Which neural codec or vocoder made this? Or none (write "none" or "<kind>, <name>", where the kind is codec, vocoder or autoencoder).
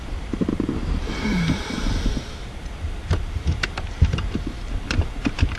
vocoder, BigVGAN v2